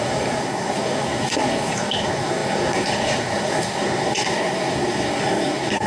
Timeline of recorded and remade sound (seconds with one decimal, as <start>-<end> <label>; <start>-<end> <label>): 0.0-5.9 remade